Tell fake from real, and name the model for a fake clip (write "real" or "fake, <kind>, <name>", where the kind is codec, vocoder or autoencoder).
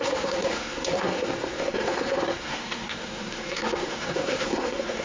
fake, codec, SNAC